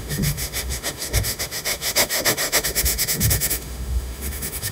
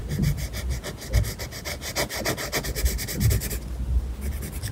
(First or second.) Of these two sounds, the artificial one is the first